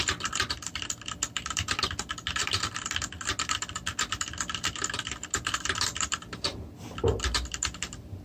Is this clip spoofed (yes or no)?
no